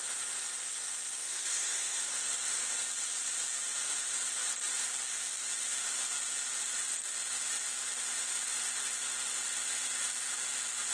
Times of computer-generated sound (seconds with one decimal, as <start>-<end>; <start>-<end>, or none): 1.2-2.0